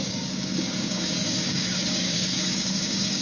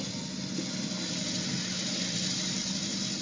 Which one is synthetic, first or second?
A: first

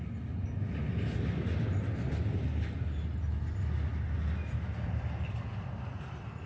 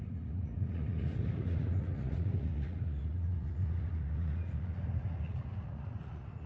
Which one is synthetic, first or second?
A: second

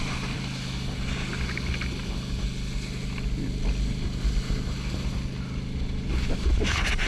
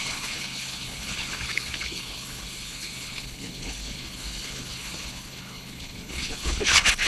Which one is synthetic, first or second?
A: second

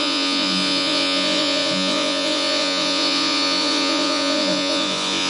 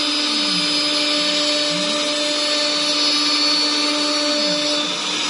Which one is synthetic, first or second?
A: first